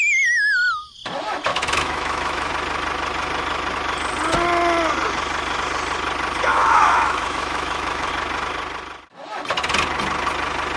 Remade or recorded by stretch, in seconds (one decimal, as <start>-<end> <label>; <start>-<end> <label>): 0.0-1.5 recorded; 1.5-2.5 remade; 2.5-6.5 recorded; 6.5-8.1 remade; 8.1-10.8 recorded